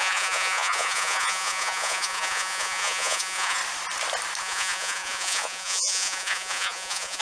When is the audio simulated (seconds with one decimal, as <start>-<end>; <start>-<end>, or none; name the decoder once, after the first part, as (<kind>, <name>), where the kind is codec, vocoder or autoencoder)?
0.0-3.6 (vocoder, Vocos); 4.4-7.2